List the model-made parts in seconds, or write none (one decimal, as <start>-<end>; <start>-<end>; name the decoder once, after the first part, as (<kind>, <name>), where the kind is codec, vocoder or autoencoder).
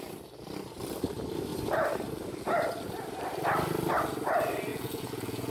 4.7-5.5 (vocoder, Vocos)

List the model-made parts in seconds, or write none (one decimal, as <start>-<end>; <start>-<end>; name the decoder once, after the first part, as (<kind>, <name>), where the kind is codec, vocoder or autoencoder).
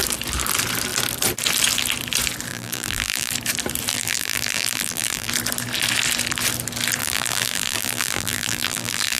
2.5-3.3 (vocoder, BigVGAN v2); 3.9-5.3; 7.0-9.2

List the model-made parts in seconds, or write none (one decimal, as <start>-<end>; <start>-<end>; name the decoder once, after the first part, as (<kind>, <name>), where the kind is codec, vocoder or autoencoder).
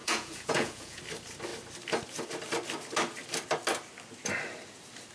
0.0-1.0 (vocoder, Vocos)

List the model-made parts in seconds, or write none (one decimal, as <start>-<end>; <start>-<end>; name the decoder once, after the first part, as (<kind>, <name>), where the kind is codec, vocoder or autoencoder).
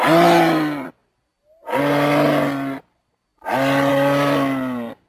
none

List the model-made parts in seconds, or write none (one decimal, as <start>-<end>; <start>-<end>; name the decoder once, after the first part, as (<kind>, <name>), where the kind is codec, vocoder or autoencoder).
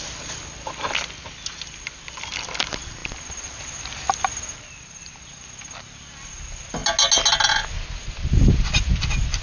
none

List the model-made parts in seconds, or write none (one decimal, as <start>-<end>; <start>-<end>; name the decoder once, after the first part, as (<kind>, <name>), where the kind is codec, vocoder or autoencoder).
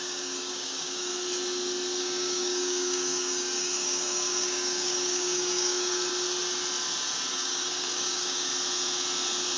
0.0-1.1 (codec, DAC); 2.0-6.1; 7.3-8.5